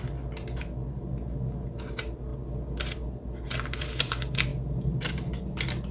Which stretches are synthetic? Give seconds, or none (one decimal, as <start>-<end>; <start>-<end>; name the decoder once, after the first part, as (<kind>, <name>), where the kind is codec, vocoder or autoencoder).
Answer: none